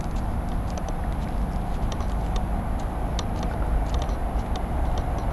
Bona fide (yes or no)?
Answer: yes